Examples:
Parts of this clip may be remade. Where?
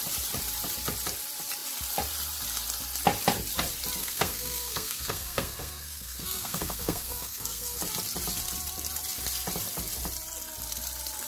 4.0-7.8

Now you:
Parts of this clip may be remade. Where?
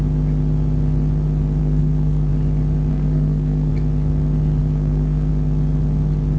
1.6-2.3; 2.9-3.7; 4.6-5.3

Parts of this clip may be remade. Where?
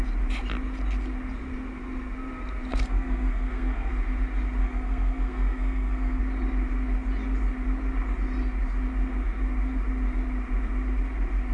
2.7-3.9; 4.6-6.2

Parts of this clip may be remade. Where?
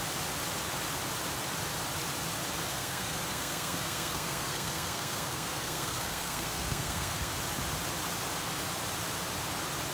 2.7-7.3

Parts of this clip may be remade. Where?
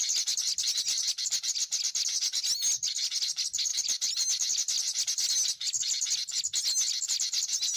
none